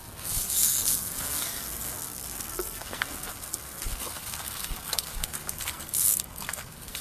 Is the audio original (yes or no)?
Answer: no